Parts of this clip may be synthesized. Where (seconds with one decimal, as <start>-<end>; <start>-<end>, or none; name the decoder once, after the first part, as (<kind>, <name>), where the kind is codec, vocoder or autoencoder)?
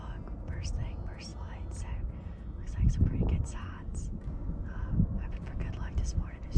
none